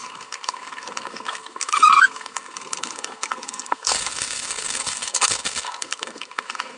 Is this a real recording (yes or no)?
no